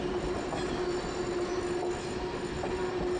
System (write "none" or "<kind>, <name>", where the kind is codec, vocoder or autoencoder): none